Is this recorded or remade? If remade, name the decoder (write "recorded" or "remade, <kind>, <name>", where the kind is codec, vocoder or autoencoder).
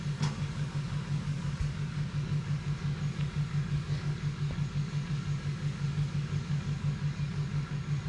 remade, codec, DAC